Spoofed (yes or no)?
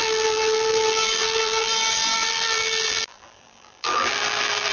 yes